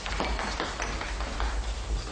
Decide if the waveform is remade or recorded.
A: recorded